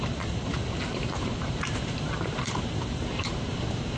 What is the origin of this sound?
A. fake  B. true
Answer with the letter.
A